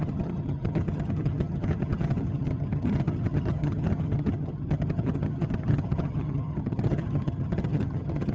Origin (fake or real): fake